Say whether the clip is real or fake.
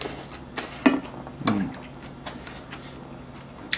real